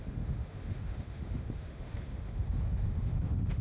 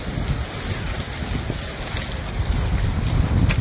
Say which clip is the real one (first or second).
second